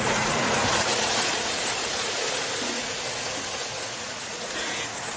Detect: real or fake fake